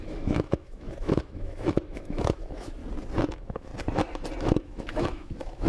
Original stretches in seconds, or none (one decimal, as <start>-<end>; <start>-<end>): 2.8-3.3; 3.7-4.4